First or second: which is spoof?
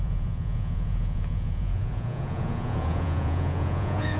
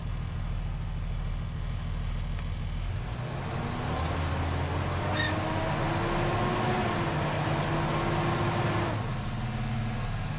first